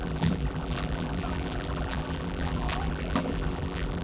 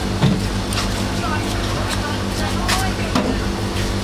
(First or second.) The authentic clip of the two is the second